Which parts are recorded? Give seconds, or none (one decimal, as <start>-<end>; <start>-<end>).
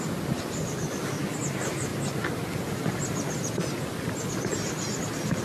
0.0-5.4